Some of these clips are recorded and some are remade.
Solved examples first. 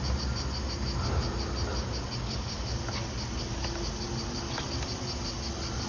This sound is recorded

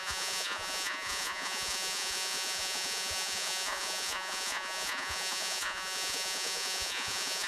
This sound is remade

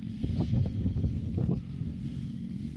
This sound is remade